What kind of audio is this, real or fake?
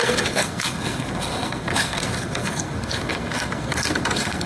fake